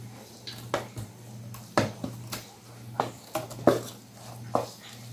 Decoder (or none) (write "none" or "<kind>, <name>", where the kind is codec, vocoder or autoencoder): none